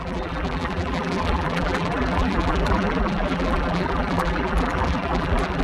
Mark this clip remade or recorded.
remade